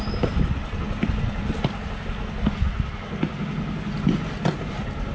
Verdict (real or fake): real